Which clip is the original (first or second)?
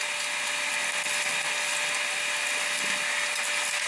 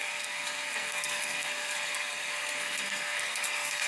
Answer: first